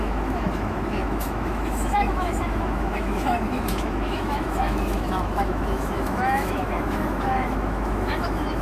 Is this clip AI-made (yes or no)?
yes